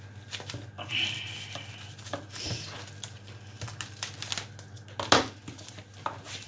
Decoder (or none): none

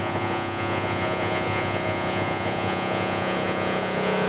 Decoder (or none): vocoder, Vocos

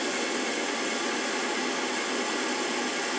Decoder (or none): none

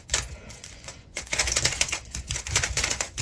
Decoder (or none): vocoder, Vocos